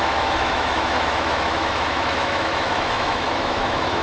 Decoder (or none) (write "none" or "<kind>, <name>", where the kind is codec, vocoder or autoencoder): autoencoder, DAC-VAE